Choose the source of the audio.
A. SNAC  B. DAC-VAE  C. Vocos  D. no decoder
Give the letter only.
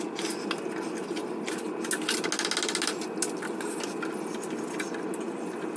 D